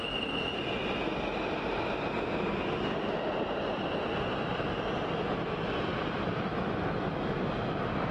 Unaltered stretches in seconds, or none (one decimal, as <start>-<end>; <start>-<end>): 0.0-6.5; 7.4-8.1